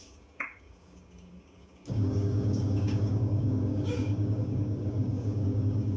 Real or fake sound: fake